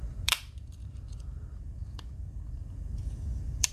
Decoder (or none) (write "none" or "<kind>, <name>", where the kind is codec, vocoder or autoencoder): vocoder, BigVGAN v2